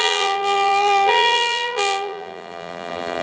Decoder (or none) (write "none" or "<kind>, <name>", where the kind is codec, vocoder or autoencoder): vocoder, BigVGAN v2